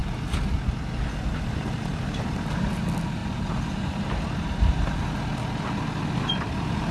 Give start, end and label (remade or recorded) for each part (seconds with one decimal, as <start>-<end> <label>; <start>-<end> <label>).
0.0-1.9 recorded; 1.9-2.7 remade; 2.7-3.2 recorded; 3.2-5.0 remade; 5.0-6.9 recorded